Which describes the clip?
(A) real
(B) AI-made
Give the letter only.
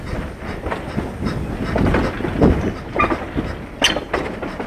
A